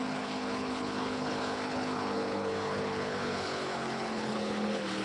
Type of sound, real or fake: fake